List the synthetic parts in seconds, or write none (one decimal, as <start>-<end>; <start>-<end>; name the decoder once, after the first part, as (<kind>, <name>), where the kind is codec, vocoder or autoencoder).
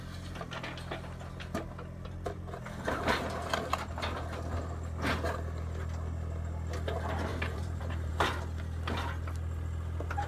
7.3-8.1 (vocoder, BigVGAN v2)